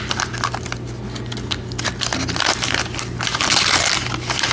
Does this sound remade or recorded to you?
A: recorded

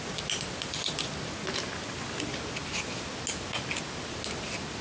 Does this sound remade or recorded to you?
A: recorded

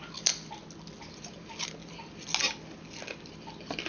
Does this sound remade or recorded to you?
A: recorded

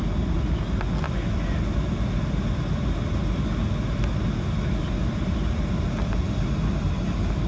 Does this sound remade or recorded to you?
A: recorded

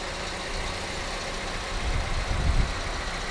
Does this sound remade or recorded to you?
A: recorded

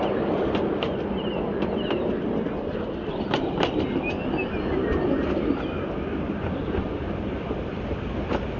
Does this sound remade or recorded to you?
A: recorded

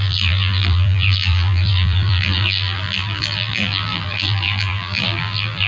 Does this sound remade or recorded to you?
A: remade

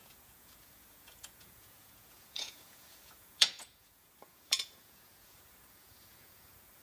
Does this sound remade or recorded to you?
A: remade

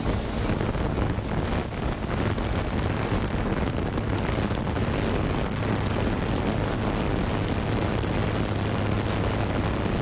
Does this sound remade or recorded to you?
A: recorded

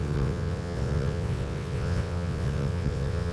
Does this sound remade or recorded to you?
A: remade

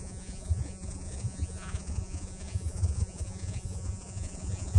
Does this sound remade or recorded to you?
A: remade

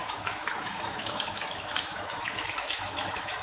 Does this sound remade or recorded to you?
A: remade